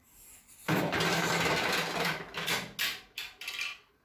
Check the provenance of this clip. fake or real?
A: real